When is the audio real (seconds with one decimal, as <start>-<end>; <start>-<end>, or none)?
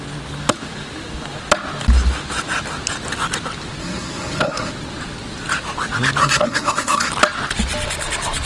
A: 0.0-3.8; 4.7-6.2; 7.1-8.5